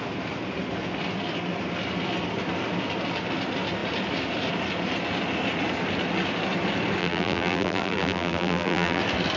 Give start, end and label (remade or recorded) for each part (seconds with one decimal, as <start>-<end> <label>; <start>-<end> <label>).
0.0-7.0 recorded; 7.0-9.0 remade; 9.0-9.4 recorded